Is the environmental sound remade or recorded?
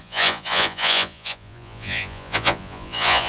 remade